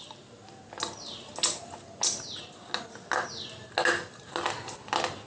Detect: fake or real real